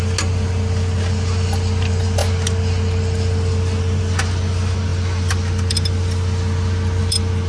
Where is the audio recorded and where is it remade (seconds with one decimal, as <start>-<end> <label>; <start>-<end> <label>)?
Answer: 0.0-7.5 recorded